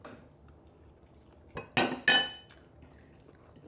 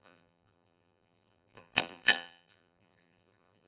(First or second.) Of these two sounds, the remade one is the second